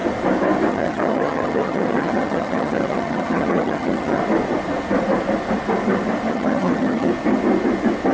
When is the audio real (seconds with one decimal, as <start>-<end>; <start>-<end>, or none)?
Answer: 0.0-0.7; 4.2-6.3; 7.1-8.1